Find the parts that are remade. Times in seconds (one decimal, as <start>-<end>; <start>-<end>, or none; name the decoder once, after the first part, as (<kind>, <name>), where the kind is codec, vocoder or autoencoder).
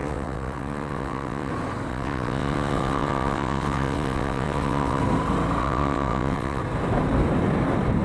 0.0-1.5 (vocoder, WaveNeXt); 1.9-5.0; 5.6-6.6